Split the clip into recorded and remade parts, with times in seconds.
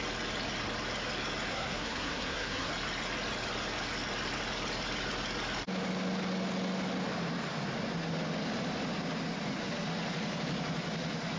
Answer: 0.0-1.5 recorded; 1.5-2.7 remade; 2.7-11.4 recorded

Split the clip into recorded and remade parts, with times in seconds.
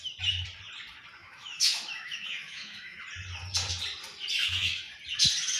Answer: 0.0-1.2 recorded; 1.2-3.0 remade; 3.0-4.4 recorded; 4.4-4.9 remade; 4.9-5.6 recorded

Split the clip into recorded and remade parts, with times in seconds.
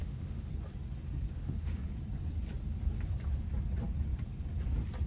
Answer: 0.0-0.5 remade; 0.5-1.3 recorded; 1.3-1.8 remade; 1.8-5.1 recorded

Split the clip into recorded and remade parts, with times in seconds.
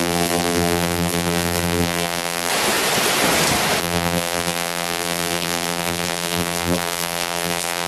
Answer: 0.0-2.5 remade; 2.5-3.8 recorded; 3.8-7.9 remade